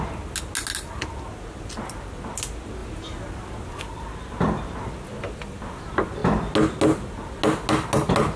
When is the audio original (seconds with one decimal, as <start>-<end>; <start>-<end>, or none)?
0.0-8.4